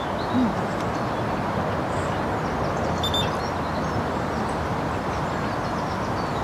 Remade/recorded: recorded